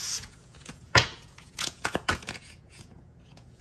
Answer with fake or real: fake